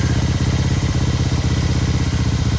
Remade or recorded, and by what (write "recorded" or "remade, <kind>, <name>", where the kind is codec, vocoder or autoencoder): recorded